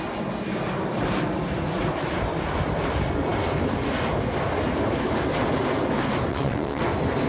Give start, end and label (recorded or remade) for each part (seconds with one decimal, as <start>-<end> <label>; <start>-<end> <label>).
0.0-6.3 recorded; 6.3-6.8 remade; 6.8-7.3 recorded